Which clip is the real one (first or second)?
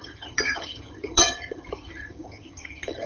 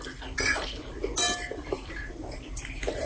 second